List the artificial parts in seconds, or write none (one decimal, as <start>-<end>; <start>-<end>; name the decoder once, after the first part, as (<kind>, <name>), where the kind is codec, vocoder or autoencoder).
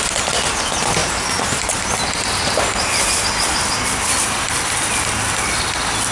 1.0-3.3 (vocoder, BigVGAN v2)